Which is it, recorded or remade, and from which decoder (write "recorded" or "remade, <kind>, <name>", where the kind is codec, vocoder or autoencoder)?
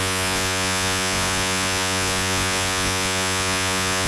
remade, vocoder, Vocos